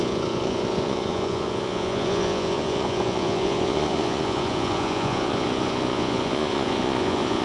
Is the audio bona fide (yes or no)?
no